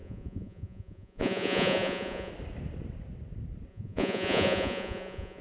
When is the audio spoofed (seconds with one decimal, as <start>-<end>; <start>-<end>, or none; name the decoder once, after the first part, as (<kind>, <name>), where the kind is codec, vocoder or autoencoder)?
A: 0.0-2.3 (vocoder, Vocos); 3.7-5.4